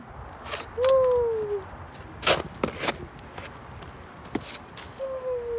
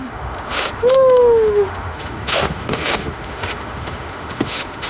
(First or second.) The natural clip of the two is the first